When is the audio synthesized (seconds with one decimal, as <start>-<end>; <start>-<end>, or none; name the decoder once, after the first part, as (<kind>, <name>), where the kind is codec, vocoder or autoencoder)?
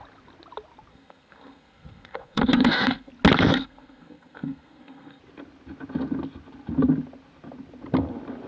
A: 0.9-3.1 (codec, SNAC); 3.5-5.2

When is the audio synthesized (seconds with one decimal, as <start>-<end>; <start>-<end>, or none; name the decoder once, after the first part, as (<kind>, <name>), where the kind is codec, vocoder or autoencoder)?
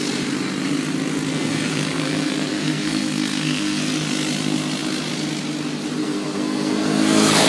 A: 1.3-3.8 (codec, SNAC); 6.0-7.5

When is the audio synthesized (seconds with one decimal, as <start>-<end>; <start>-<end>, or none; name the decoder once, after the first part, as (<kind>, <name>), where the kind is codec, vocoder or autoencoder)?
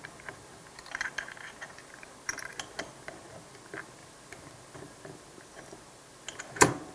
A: none